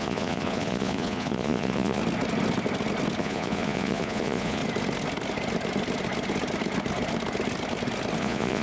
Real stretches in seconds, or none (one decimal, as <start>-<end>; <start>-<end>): 2.0-3.2; 4.6-8.2